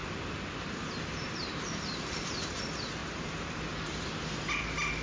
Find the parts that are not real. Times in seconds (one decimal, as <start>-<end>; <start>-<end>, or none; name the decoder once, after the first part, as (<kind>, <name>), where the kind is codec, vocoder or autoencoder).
0.0-2.6 (vocoder, BigVGAN v2); 3.0-3.5